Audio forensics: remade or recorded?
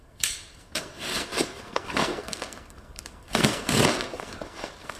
remade